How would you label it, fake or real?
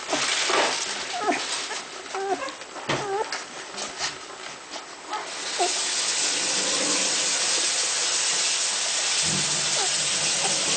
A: real